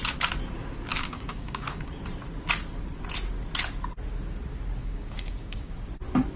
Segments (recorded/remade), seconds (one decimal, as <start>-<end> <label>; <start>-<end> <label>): 0.0-0.9 recorded; 0.9-2.0 remade; 2.0-4.8 recorded; 4.8-5.7 remade; 5.7-6.4 recorded